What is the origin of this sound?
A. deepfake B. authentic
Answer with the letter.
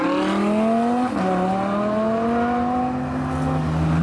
B